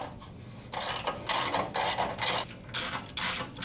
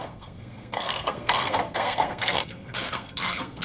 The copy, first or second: second